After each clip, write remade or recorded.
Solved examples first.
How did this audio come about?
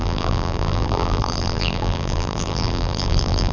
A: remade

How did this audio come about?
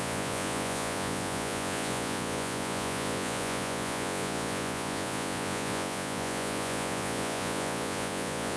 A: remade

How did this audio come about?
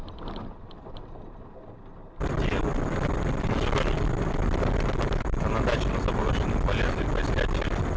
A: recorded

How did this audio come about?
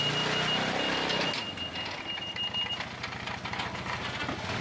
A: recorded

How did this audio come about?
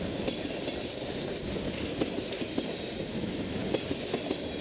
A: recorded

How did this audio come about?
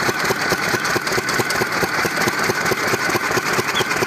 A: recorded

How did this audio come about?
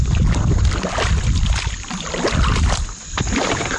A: recorded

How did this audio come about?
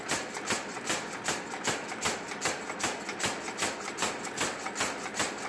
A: recorded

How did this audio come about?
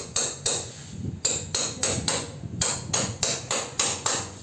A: remade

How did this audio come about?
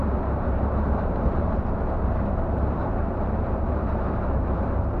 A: remade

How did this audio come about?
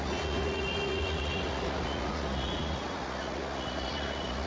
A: remade